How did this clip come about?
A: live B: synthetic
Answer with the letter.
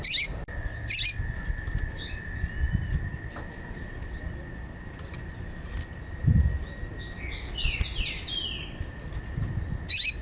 A